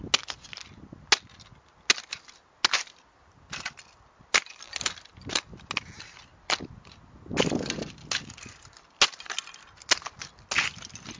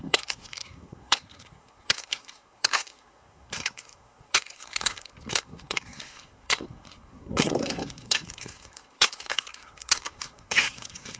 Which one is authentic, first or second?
first